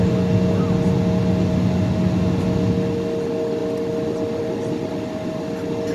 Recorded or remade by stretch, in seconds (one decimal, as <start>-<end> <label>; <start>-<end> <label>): 0.0-5.9 recorded